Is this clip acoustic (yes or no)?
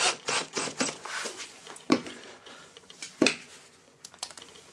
no